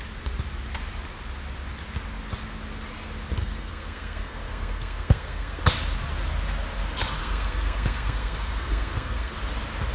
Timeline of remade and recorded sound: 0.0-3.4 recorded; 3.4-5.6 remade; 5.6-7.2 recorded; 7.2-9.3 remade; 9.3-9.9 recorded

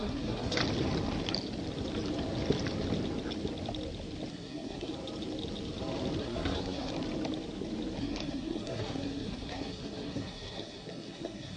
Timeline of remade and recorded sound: 0.0-0.6 remade; 0.6-4.3 recorded; 4.3-4.9 remade; 4.9-6.2 recorded; 6.2-6.9 remade; 6.9-8.0 recorded; 8.0-11.6 remade

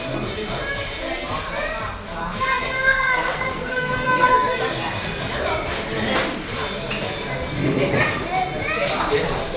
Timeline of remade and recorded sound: 0.0-2.2 recorded; 2.2-4.6 remade; 4.6-9.6 recorded

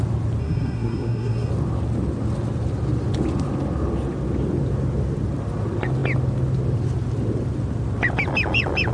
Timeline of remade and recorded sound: 0.0-0.4 recorded; 0.4-1.5 remade; 1.5-8.9 recorded